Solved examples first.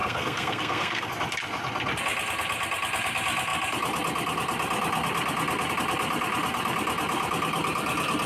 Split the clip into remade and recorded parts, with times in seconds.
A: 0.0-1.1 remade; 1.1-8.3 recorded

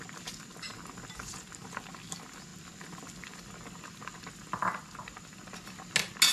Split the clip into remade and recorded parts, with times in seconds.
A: 0.0-6.3 recorded

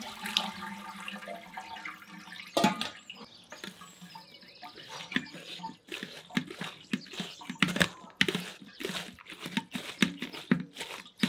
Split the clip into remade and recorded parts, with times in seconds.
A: 0.0-11.3 recorded

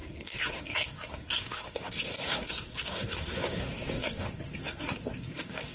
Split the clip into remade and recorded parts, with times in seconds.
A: 0.0-5.7 remade

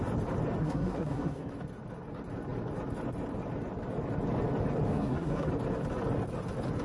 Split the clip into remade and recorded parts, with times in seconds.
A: 0.0-0.6 recorded; 0.6-1.5 remade; 1.5-4.9 recorded; 4.9-5.5 remade; 5.5-6.8 recorded

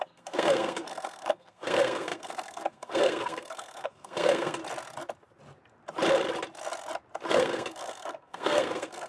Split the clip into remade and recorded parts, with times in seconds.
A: 0.0-4.6 remade; 4.6-7.3 recorded; 7.3-9.1 remade

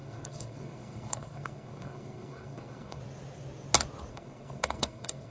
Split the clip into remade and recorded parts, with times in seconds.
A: 0.0-3.0 remade; 3.0-4.1 recorded; 4.1-5.3 remade